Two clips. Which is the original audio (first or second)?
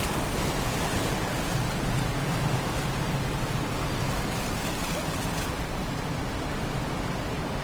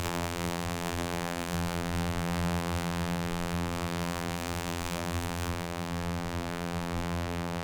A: first